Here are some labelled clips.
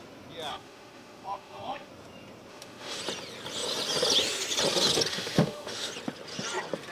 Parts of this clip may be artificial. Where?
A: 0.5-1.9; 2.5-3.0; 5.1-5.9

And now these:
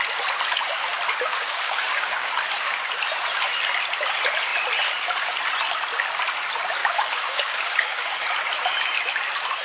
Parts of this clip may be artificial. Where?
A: 1.3-2.3; 6.8-8.2